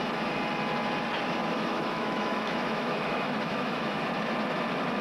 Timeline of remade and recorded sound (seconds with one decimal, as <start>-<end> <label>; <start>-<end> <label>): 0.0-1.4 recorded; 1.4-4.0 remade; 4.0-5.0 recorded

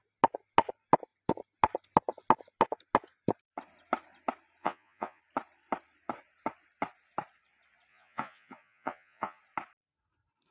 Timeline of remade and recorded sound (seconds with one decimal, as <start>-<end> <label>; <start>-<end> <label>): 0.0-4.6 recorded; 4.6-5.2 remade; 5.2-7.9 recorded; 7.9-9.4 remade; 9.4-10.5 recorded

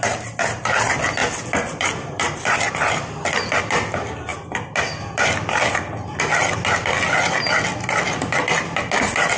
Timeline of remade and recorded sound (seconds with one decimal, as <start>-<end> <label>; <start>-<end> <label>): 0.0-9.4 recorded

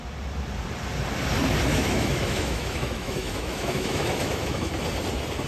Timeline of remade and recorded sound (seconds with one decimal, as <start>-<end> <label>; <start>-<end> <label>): 0.0-1.7 recorded; 1.7-4.7 remade; 4.7-5.5 recorded